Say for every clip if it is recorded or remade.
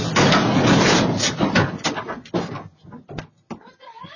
remade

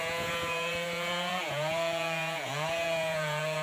remade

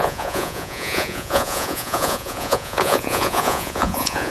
remade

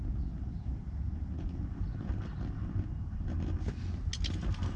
recorded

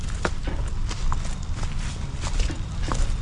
recorded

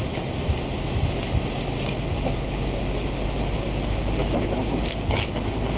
recorded